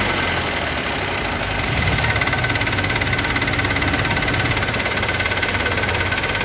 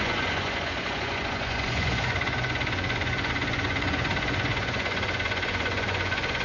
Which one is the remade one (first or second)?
second